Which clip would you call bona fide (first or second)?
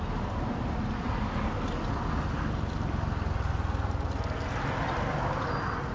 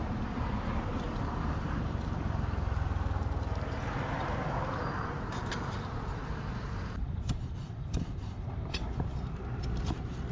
first